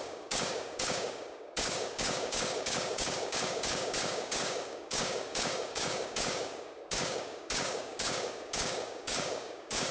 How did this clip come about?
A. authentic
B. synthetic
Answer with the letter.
B